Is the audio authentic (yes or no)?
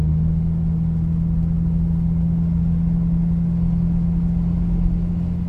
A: yes